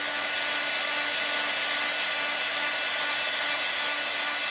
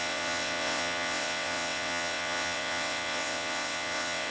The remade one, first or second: second